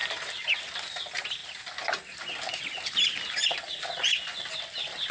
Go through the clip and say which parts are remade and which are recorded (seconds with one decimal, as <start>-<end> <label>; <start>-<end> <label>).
0.0-5.1 recorded